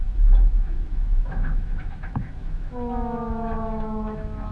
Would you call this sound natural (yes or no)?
no